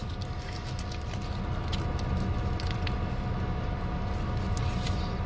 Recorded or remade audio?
recorded